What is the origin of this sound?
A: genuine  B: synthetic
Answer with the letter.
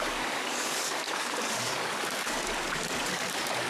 B